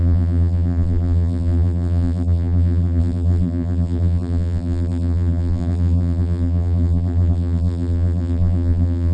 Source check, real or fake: fake